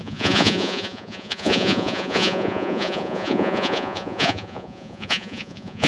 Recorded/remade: remade